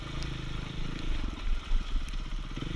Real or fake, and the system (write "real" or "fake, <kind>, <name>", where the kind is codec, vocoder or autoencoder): real